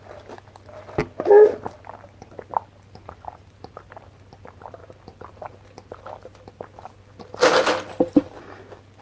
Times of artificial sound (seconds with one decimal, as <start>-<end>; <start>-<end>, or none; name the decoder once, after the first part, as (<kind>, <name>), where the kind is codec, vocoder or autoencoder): none

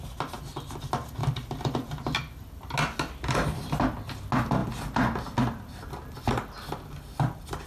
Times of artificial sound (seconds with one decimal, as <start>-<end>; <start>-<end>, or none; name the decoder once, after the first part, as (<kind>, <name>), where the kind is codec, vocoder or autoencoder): none